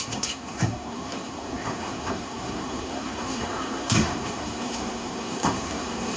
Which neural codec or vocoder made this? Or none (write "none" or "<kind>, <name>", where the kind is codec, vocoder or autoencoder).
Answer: codec, SNAC